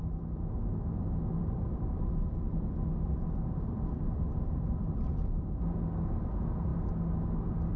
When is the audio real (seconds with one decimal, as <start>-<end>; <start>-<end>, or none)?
0.0-1.4; 5.7-7.8